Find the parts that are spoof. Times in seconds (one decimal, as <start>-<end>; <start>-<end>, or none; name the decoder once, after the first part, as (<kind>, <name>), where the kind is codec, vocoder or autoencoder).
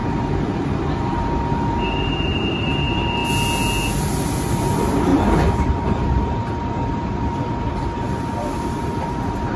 0.0-3.2 (vocoder, BigVGAN v2); 4.0-9.6